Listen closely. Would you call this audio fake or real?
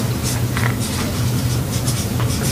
real